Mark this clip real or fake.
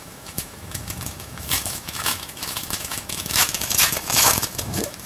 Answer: fake